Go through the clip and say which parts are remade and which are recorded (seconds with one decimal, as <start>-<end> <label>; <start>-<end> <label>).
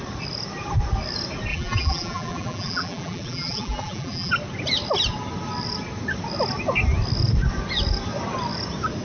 0.0-1.5 recorded; 1.5-4.3 remade; 4.3-9.0 recorded